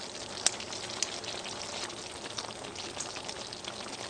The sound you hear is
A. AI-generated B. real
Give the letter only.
B